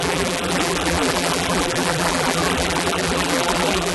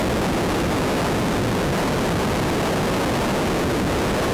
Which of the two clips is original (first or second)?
second